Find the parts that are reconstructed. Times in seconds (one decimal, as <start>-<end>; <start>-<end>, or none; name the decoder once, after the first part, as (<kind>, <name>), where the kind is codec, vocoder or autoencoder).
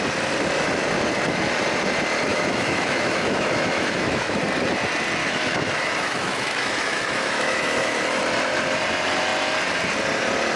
2.3-4.4 (autoencoder, DAC-VAE); 5.2-8.2